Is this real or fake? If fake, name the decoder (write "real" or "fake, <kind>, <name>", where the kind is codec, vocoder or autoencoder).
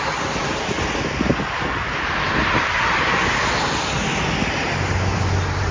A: real